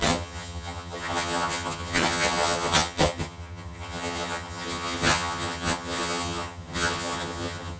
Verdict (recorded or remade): remade